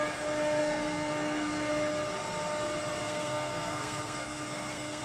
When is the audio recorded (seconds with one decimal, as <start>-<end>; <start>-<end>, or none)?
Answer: 0.0-0.6; 1.7-3.0